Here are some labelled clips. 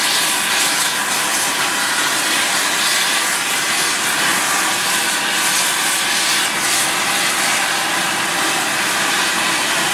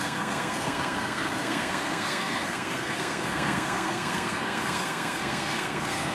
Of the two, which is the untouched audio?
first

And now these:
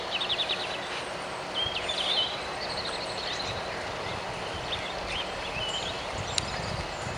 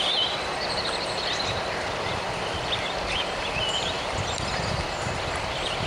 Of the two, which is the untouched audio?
first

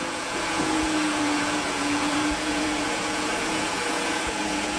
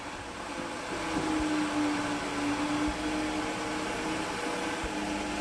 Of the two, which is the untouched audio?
second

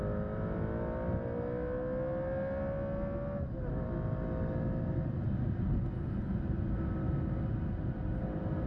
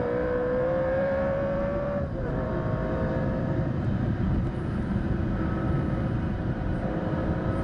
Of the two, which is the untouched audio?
first